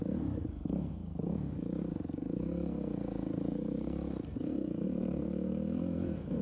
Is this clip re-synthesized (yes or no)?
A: yes